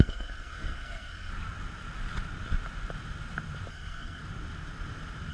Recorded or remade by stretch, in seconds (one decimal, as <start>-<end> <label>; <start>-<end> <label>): 0.0-1.3 remade; 1.3-3.7 recorded; 3.7-4.2 remade; 4.2-5.3 recorded